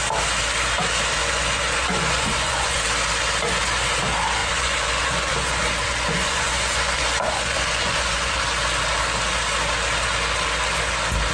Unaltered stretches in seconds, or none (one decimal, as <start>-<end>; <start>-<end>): 0.0-1.2; 2.8-4.4; 8.3-11.3